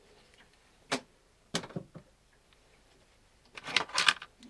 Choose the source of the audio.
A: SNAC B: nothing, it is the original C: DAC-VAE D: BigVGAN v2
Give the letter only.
D